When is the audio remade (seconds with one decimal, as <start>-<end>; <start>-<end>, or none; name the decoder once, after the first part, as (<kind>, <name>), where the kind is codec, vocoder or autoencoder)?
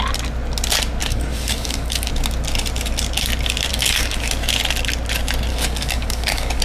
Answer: 1.0-2.1 (codec, DAC); 3.7-4.3; 5.5-6.6